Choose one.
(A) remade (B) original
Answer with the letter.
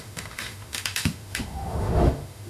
A